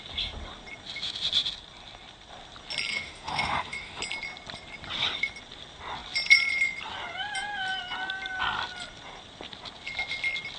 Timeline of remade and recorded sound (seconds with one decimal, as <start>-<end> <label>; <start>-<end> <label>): 0.0-2.9 recorded; 2.9-4.0 remade; 4.0-10.6 recorded